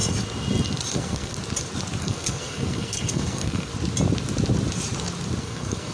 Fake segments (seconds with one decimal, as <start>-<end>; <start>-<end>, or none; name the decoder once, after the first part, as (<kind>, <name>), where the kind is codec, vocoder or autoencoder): 0.9-1.3 (codec, SNAC); 2.0-3.7; 5.4-5.9